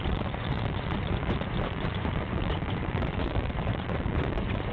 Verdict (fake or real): fake